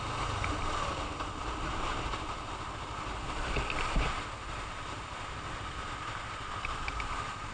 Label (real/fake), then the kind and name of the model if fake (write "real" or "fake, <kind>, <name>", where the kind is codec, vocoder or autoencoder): real